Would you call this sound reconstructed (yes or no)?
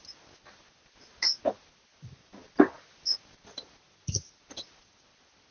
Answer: no